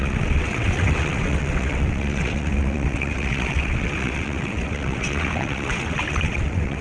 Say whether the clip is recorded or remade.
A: remade